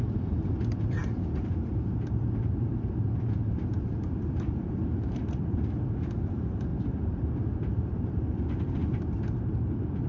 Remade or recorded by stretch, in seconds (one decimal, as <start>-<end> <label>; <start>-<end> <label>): 0.0-6.7 remade; 6.7-7.6 recorded; 7.6-10.1 remade